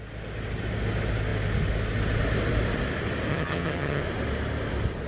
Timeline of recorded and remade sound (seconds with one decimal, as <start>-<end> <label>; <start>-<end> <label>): 0.0-3.3 recorded; 3.3-4.0 remade; 4.0-5.1 recorded